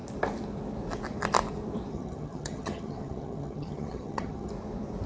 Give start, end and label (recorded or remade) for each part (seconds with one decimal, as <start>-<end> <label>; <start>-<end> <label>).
0.0-1.9 recorded; 1.9-4.5 remade; 4.5-5.1 recorded